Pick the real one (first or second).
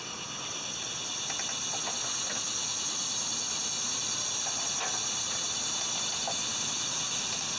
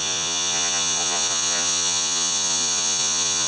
first